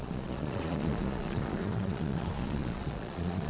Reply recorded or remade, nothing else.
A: remade